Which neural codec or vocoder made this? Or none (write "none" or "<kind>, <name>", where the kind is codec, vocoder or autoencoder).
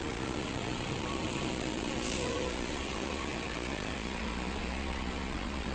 vocoder, Vocos